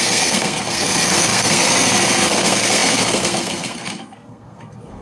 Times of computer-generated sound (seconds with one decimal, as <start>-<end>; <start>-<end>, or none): 0.0-5.0